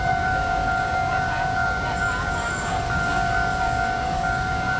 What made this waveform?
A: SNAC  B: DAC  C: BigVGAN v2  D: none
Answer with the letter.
B